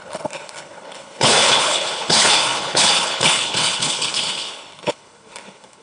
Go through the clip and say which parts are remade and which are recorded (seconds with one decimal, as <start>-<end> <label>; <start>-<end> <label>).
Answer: 0.0-5.8 remade